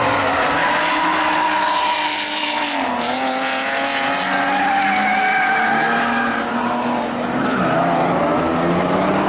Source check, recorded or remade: recorded